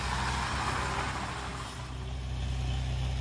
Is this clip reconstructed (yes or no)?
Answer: no